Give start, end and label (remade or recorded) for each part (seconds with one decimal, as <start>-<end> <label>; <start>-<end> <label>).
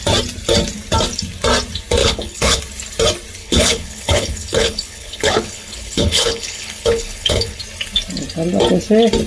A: 0.0-2.0 recorded; 2.0-2.6 remade; 2.6-3.4 recorded; 3.4-7.6 remade; 7.6-9.3 recorded